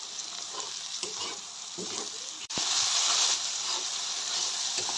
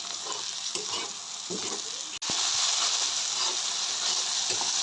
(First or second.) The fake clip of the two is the first